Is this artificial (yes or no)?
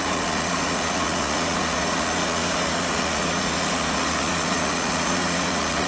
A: yes